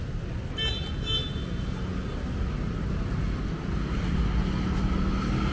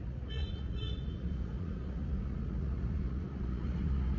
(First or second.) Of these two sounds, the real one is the first